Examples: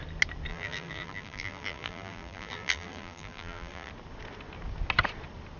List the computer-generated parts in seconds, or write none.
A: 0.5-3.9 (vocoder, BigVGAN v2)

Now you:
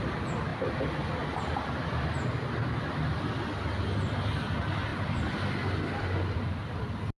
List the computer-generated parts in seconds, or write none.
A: none

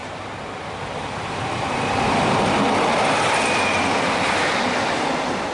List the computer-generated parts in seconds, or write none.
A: none